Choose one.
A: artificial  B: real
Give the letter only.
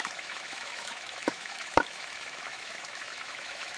A